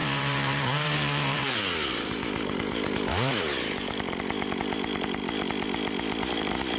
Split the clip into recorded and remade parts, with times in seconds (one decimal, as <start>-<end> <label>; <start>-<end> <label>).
0.0-4.0 remade; 4.0-6.8 recorded